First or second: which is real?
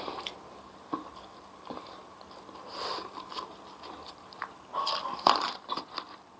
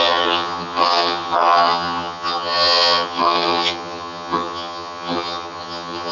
first